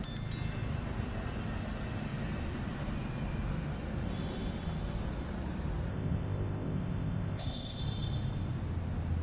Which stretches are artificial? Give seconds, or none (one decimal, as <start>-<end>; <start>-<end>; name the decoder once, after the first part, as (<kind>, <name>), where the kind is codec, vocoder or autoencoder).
5.9-7.8 (codec, ZipCodec)